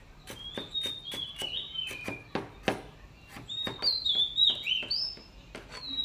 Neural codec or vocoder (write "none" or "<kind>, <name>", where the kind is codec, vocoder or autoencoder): none